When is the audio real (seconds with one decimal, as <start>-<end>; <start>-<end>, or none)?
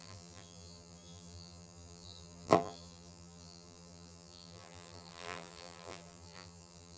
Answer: none